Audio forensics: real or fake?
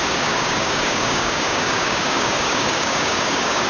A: fake